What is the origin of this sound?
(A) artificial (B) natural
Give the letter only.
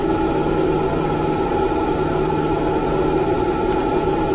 B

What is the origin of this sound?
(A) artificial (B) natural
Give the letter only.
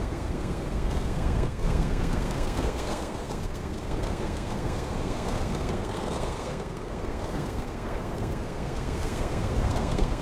A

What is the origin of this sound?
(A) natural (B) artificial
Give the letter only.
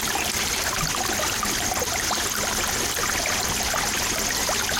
A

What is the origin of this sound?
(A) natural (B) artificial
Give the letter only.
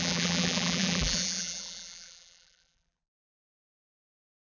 B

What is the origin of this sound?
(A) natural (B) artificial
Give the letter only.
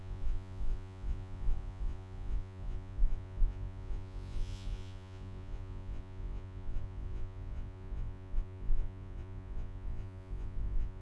B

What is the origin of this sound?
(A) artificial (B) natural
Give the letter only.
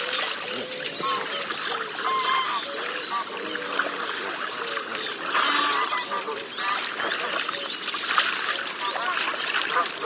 B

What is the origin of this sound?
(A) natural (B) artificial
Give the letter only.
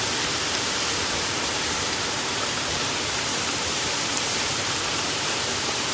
B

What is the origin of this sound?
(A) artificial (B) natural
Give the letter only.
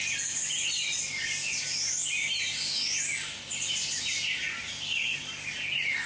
B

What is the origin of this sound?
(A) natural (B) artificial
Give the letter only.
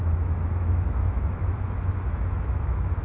B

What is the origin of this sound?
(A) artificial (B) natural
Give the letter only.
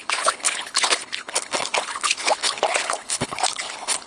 A